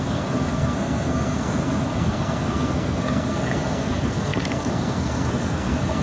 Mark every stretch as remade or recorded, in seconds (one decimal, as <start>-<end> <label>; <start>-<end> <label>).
0.0-6.0 remade